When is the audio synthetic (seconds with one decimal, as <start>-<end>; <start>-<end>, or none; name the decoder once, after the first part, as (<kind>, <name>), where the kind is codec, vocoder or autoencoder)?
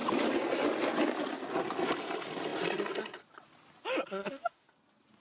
4.2-4.7 (autoencoder, DAC-VAE)